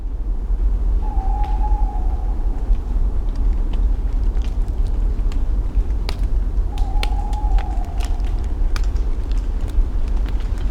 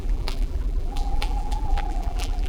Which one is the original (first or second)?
first